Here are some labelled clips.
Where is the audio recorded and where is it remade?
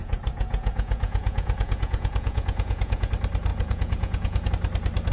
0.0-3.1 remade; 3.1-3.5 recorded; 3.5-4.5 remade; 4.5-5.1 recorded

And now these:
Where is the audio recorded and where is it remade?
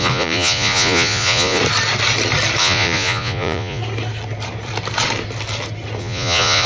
0.0-1.6 remade; 1.6-2.6 recorded; 2.6-3.8 remade; 3.8-6.0 recorded; 6.0-6.7 remade